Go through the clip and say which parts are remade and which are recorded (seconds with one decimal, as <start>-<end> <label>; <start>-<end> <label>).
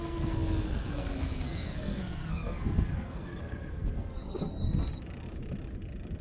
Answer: 0.0-4.9 remade; 4.9-6.2 recorded